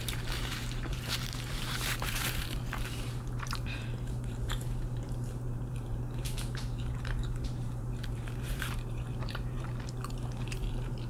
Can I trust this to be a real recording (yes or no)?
no